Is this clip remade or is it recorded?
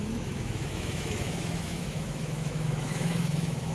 remade